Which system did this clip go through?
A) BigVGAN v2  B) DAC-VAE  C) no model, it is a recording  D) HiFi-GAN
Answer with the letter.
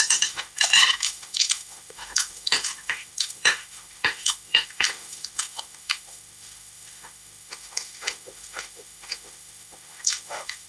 B